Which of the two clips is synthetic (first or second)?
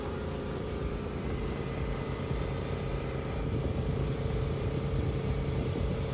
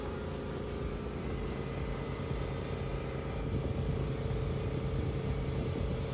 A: first